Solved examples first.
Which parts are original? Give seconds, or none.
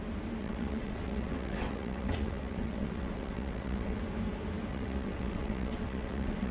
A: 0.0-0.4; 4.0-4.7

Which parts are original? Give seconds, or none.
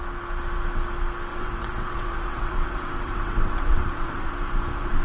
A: 0.0-1.3; 4.3-5.0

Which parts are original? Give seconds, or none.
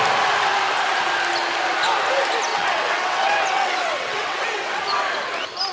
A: 0.0-2.5; 4.8-5.7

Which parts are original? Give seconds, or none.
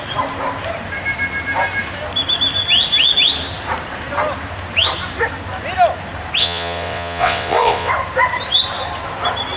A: 0.0-6.4; 7.9-9.6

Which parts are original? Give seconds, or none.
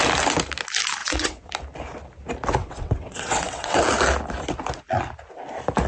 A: 0.0-1.0; 1.5-2.6; 3.8-5.9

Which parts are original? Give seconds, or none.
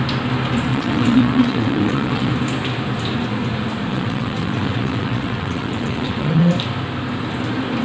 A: 0.0-0.7; 2.3-3.9; 6.5-7.8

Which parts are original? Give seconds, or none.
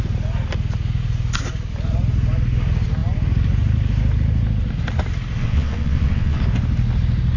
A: 0.0-5.4; 6.4-7.4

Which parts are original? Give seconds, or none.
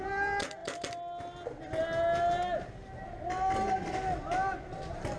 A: 0.0-5.2